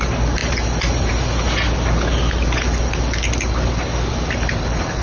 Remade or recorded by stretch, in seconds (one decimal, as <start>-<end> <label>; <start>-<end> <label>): 0.0-5.0 recorded